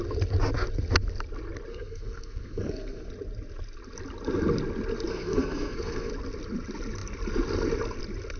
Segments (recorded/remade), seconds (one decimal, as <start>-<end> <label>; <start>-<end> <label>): 0.0-1.7 recorded; 1.7-3.1 remade; 3.1-5.1 recorded; 5.1-6.1 remade; 6.1-8.4 recorded